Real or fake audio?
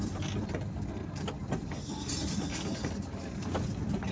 real